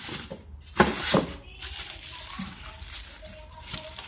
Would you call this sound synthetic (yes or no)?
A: no